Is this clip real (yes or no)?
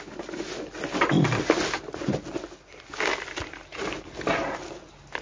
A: yes